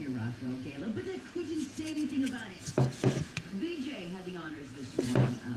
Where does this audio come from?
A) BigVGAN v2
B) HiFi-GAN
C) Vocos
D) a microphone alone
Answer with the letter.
C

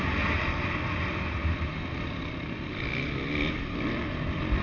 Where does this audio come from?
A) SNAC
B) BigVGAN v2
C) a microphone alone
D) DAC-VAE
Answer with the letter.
C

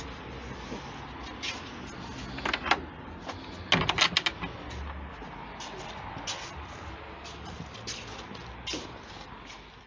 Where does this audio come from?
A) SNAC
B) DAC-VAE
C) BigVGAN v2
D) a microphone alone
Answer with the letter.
D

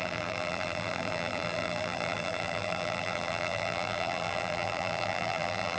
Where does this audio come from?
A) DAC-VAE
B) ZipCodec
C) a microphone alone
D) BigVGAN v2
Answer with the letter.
D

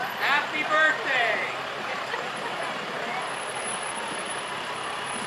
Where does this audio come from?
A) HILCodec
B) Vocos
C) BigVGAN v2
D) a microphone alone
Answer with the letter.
C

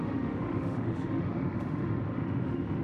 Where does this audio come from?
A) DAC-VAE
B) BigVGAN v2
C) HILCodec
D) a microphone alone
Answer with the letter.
A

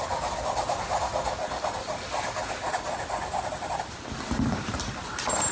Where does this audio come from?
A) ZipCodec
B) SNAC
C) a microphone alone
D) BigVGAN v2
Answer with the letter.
C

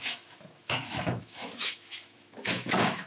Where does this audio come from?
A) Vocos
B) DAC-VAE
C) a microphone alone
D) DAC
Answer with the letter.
B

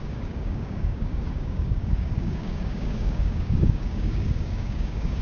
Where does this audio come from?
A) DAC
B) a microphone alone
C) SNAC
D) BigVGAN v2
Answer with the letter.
A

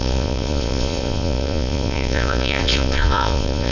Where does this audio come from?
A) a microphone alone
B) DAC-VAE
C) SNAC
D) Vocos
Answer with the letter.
D